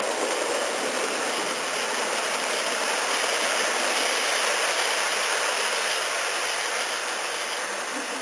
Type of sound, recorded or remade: recorded